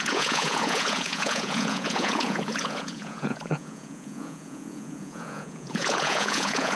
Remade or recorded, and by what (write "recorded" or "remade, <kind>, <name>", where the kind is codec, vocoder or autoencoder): remade, vocoder, Vocos